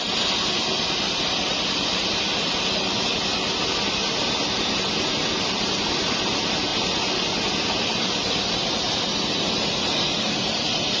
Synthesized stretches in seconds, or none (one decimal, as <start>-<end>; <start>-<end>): none